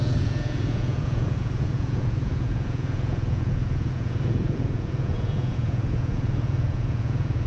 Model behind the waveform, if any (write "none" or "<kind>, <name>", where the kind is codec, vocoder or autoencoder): vocoder, Vocos